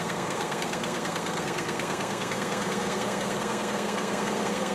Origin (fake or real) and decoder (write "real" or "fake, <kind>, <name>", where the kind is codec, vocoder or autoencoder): fake, codec, SNAC